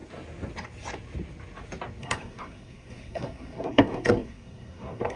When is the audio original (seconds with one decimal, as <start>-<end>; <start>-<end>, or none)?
0.0-2.0